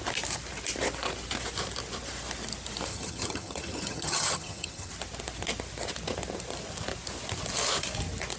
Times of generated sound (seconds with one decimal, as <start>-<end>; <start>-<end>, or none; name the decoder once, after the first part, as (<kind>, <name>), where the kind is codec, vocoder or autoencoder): 2.9-4.9 (vocoder, HiFi-GAN)